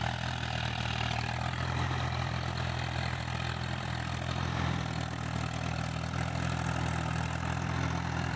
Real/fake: fake